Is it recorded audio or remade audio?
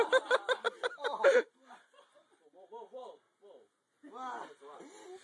recorded